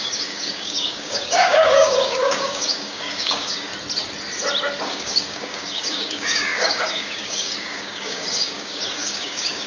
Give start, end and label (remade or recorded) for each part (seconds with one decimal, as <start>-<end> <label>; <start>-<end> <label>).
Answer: 0.0-3.7 remade; 3.7-4.8 recorded; 4.8-9.7 remade